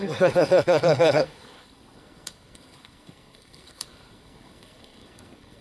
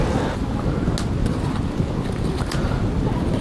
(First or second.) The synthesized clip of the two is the first